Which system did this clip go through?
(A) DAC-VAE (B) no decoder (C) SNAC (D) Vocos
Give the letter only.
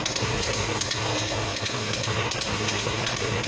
C